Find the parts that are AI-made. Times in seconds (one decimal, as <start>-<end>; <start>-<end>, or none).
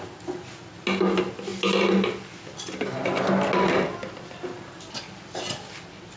none